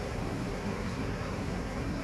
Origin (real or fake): fake